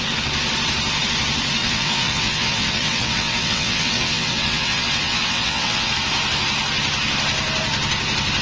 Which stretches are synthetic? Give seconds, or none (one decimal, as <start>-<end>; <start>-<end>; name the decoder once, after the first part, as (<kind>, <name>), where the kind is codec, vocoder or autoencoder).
1.6-5.9 (vocoder, WaveNeXt)